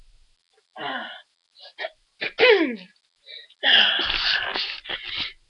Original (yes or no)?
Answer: yes